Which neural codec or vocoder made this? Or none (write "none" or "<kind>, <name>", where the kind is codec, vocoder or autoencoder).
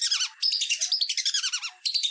none